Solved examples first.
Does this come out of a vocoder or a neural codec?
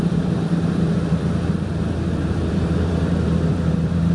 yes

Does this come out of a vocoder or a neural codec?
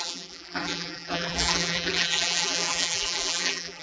yes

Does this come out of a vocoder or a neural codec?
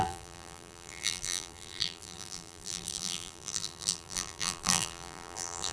yes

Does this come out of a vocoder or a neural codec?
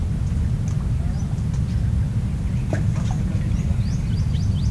no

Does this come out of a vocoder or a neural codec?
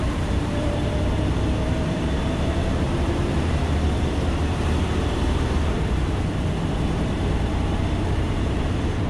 yes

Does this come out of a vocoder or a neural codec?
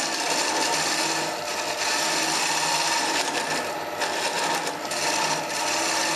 no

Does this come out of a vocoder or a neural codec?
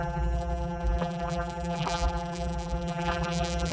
yes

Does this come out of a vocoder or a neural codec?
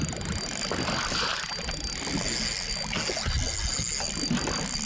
no